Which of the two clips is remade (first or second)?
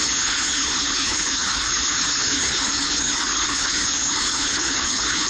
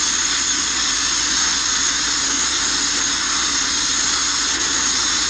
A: first